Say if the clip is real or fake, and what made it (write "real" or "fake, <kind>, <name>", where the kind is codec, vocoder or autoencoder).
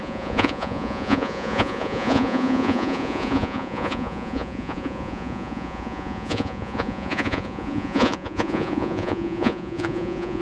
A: fake, vocoder, Vocos